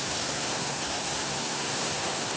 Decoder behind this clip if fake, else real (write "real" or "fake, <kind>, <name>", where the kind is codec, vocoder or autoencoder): fake, codec, SNAC